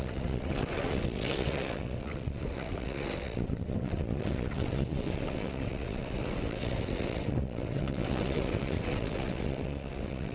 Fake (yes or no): yes